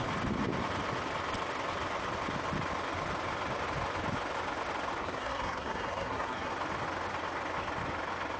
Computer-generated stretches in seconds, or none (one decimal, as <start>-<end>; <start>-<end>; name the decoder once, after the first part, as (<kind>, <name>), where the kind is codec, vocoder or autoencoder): 5.0-6.5 (codec, SNAC)